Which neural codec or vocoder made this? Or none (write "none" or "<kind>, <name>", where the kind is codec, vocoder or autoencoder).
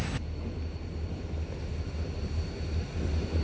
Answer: none